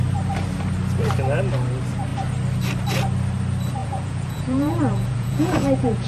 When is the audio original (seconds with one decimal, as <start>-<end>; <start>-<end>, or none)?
0.0-3.8